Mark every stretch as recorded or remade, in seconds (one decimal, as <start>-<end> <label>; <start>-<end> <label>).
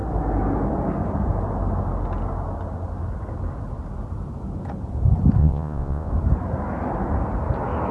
0.0-5.4 recorded; 5.4-6.1 remade; 6.1-7.9 recorded